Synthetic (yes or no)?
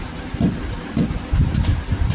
no